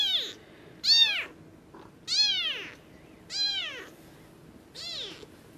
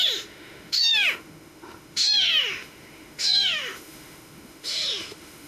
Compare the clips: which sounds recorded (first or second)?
first